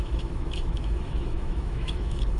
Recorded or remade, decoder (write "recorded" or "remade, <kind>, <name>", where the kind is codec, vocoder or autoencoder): remade, autoencoder, DAC-VAE